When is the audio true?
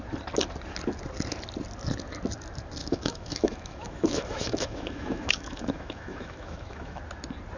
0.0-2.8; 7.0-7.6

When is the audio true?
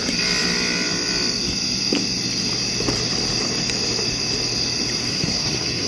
0.0-5.1